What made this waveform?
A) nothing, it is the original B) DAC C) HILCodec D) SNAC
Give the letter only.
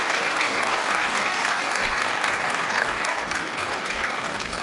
B